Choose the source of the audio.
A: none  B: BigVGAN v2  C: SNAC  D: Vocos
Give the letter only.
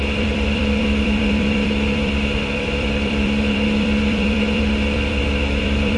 B